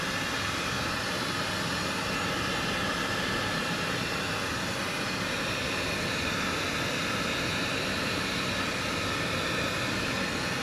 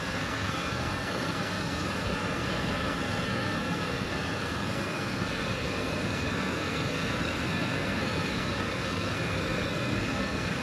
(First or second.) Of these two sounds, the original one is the first